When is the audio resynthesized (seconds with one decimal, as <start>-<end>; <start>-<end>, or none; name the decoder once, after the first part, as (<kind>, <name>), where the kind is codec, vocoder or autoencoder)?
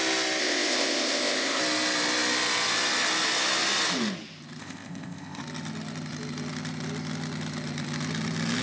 0.4-1.6 (codec, ZipCodec); 4.6-5.4